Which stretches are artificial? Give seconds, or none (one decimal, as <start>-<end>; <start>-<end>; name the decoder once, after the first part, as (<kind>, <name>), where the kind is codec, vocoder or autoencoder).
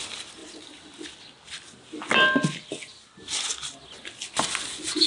none